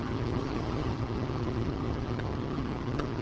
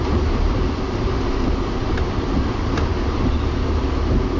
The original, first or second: second